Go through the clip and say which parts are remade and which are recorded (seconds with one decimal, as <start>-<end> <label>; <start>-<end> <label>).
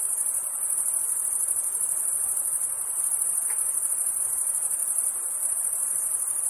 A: 0.0-6.5 recorded